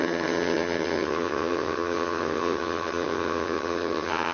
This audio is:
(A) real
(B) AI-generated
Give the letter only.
B